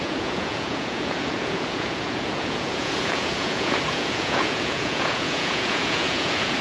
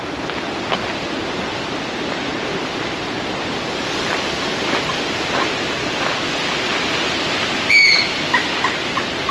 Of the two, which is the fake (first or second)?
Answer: first